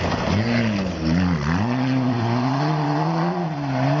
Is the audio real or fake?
real